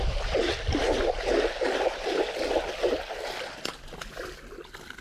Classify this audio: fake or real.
real